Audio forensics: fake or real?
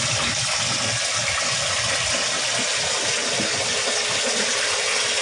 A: real